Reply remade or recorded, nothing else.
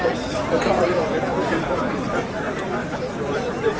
remade